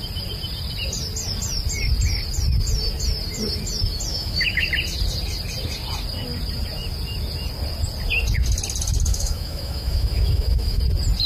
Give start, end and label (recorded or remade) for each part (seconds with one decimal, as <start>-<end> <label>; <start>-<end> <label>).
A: 0.0-4.1 recorded; 4.1-4.7 remade; 4.7-9.1 recorded; 9.1-10.8 remade; 10.8-11.3 recorded

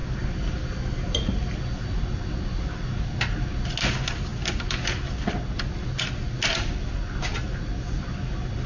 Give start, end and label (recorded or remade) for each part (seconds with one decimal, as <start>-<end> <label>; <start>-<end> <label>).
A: 0.0-8.7 recorded

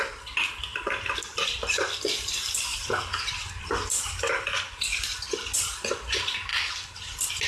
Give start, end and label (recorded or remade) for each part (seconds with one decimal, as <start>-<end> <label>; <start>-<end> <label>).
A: 0.0-0.7 recorded; 0.7-2.0 remade; 2.0-2.7 recorded; 2.7-4.3 remade; 4.3-6.5 recorded; 6.5-7.1 remade; 7.1-7.5 recorded

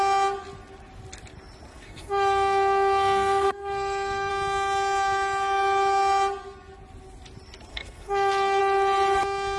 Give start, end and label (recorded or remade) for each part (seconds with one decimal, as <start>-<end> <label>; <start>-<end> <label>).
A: 0.0-1.7 recorded; 1.7-4.3 remade; 4.3-7.7 recorded; 7.7-8.6 remade; 8.6-9.6 recorded

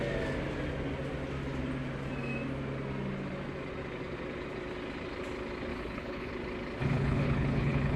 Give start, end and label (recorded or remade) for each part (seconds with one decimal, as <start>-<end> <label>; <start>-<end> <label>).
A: 0.0-5.7 recorded; 5.7-6.3 remade; 6.3-6.8 recorded; 6.8-8.0 remade

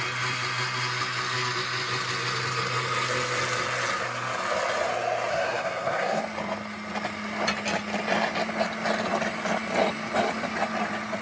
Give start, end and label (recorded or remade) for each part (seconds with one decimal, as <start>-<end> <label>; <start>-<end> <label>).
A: 0.0-5.3 recorded; 5.3-6.2 remade; 6.2-11.2 recorded

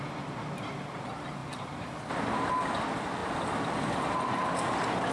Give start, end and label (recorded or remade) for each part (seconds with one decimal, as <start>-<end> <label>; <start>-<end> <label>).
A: 0.0-1.4 recorded; 1.4-2.5 remade; 2.5-3.2 recorded; 3.2-4.0 remade; 4.0-5.1 recorded

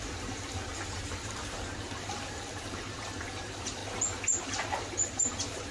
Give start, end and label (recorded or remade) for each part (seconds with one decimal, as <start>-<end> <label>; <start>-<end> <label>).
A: 0.0-3.8 remade; 3.8-4.4 recorded; 4.4-5.7 remade